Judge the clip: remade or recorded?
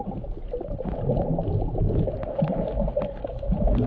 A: recorded